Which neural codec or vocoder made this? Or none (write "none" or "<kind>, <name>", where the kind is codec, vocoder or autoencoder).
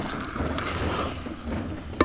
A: none